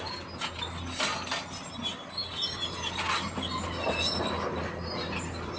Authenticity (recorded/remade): recorded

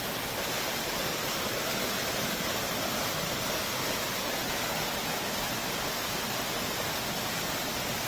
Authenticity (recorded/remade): recorded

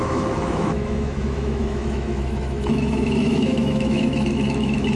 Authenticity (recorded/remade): remade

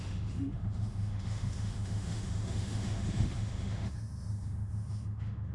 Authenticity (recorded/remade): remade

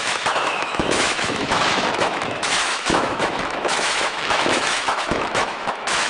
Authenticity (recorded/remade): remade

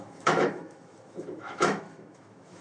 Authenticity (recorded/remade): remade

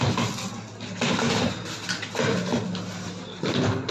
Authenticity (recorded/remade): recorded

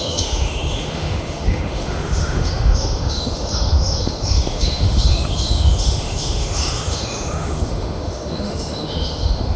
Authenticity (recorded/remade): remade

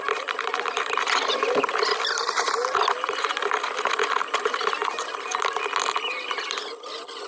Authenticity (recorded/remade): recorded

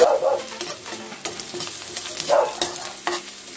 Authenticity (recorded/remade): recorded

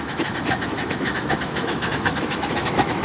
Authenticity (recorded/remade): remade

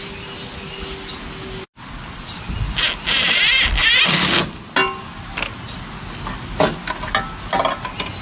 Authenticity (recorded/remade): recorded